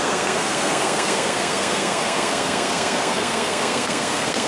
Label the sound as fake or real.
fake